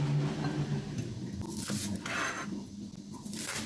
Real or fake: real